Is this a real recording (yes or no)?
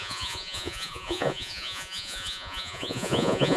no